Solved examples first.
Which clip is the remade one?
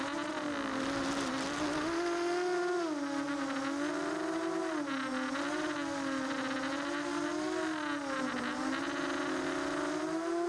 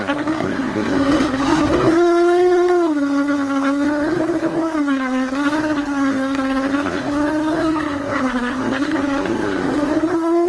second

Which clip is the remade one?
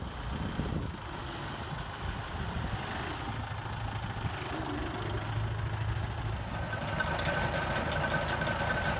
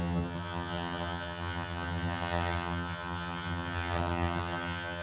second